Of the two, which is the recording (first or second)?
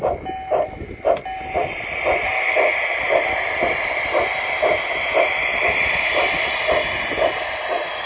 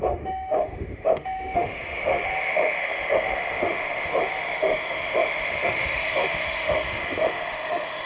first